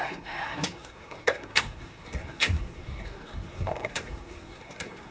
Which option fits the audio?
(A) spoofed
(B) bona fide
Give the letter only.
A